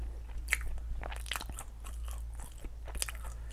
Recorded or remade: recorded